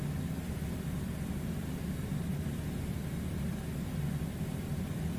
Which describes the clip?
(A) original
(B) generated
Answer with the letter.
A